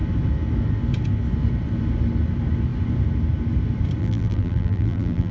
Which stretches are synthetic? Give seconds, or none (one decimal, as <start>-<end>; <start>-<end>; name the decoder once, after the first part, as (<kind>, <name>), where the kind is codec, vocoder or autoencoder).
4.0-5.3 (vocoder, BigVGAN v2)